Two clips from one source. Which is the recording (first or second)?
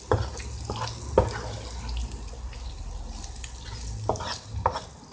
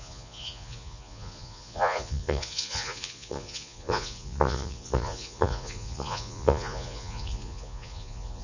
first